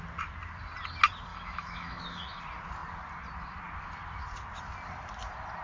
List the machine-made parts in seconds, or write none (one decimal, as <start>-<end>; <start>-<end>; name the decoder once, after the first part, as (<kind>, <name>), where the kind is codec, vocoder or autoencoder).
1.3-2.4 (autoencoder, DAC-VAE)